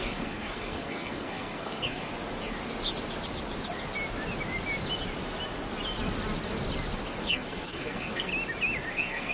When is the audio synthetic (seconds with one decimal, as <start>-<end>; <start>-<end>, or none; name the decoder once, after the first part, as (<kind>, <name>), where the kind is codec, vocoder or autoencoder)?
0.0-2.1 (codec, SNAC); 7.2-8.3; 8.9-9.3